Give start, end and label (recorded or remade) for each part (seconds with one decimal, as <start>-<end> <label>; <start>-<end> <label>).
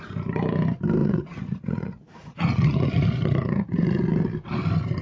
0.0-1.0 recorded; 1.0-4.0 remade; 4.0-5.0 recorded